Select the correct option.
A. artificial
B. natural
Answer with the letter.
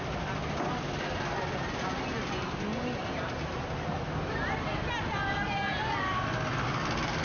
B